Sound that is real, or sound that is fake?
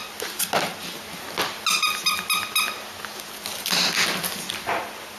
real